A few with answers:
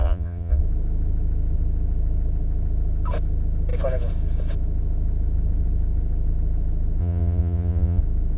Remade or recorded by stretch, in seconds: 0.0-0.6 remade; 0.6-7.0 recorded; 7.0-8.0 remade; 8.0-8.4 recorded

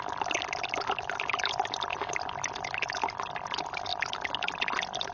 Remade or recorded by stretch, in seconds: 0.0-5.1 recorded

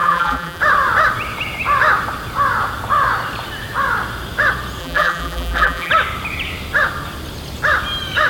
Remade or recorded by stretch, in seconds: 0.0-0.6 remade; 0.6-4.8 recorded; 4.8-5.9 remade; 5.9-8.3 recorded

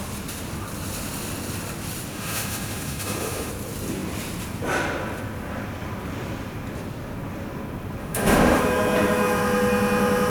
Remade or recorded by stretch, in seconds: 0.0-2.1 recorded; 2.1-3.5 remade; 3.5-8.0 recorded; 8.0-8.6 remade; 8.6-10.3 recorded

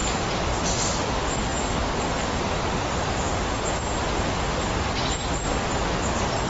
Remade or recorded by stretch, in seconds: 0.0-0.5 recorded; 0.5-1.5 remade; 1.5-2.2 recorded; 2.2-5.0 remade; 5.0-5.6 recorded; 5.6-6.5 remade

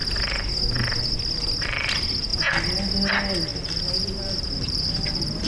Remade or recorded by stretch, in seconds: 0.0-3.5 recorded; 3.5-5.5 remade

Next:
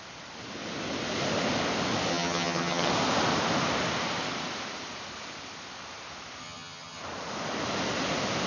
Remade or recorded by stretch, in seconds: 0.0-2.1 recorded; 2.1-2.9 remade; 2.9-6.4 recorded; 6.4-7.0 remade; 7.0-8.5 recorded